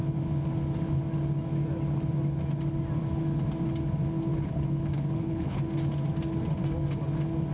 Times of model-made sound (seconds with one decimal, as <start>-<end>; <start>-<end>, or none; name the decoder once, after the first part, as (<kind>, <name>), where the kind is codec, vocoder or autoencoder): 4.3-5.6 (codec, HILCodec)